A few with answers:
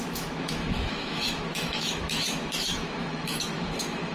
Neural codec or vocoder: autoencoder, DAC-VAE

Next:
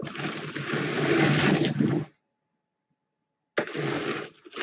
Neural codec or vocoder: none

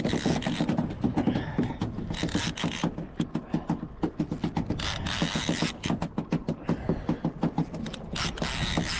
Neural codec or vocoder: none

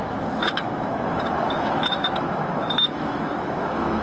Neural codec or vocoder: autoencoder, DAC-VAE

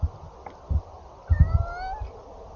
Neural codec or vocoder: none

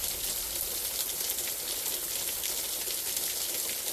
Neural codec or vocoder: none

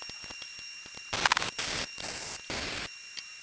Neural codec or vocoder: none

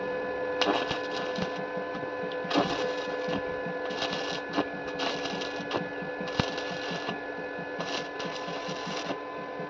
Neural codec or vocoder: none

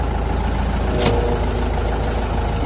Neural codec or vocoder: none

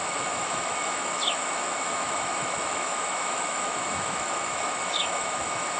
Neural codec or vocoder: autoencoder, DAC-VAE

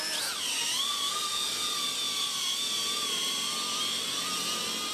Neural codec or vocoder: none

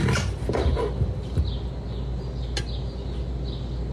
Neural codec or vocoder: none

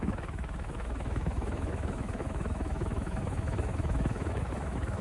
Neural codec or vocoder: autoencoder, DAC-VAE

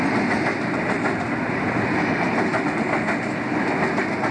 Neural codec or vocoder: none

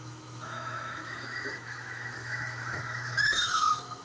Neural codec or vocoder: autoencoder, DAC-VAE